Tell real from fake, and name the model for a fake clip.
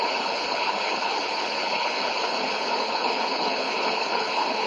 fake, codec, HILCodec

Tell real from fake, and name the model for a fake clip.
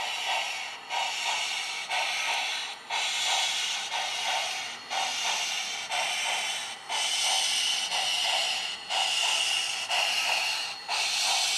real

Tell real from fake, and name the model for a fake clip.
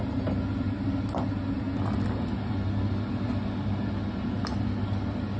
real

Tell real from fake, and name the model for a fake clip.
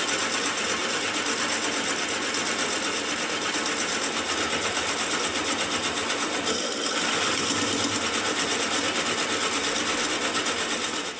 real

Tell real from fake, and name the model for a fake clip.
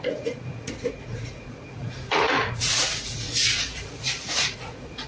fake, vocoder, Vocos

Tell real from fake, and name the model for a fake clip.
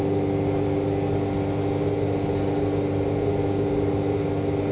real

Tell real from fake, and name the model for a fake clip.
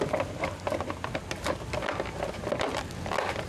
real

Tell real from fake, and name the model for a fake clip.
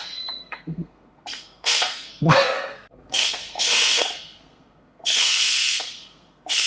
fake, codec, SNAC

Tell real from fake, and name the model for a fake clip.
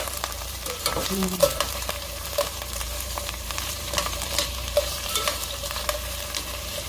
fake, vocoder, BigVGAN v2